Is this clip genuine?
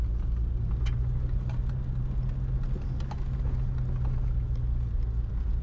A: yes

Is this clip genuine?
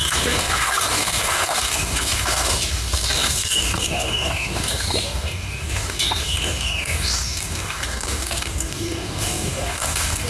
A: no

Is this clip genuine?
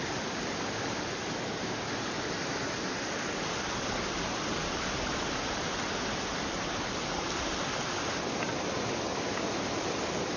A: yes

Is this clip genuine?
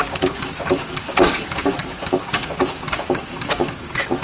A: no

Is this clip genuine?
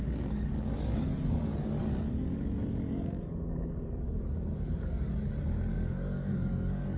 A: no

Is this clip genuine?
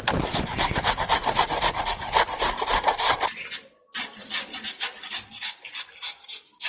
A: yes